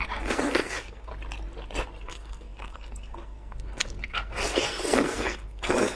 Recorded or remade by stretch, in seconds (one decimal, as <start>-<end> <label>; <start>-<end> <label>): 0.0-1.1 remade; 1.1-2.0 recorded; 2.0-6.0 remade